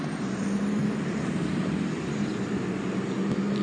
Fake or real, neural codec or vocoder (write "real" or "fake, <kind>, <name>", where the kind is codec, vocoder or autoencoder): real